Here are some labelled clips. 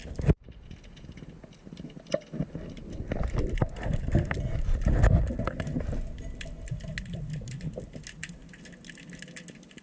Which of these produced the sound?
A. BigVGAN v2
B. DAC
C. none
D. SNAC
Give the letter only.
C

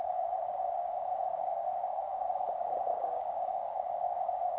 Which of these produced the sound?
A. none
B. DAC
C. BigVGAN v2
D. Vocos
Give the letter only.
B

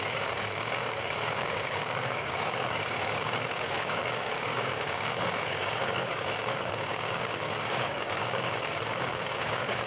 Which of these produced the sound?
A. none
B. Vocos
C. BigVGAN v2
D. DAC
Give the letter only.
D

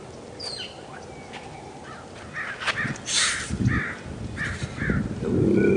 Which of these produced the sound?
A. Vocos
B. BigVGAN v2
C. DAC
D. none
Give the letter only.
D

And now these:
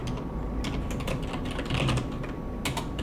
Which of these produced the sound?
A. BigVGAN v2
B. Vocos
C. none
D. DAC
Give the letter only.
C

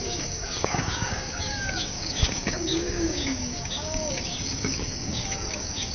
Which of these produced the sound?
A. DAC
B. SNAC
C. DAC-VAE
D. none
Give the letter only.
A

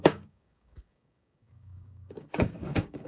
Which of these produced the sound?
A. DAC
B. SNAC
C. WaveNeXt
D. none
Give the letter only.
A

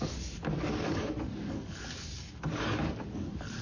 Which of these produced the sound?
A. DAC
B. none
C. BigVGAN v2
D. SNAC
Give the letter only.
A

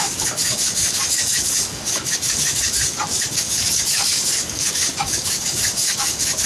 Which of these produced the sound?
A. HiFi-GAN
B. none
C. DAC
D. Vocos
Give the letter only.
C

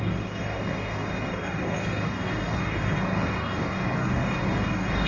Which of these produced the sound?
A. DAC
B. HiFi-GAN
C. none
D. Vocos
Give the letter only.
A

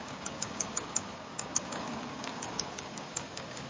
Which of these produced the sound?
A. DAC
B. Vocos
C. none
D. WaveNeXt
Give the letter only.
A